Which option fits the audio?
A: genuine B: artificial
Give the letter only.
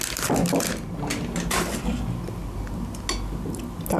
A